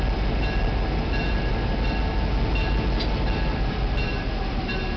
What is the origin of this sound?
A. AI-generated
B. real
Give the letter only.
B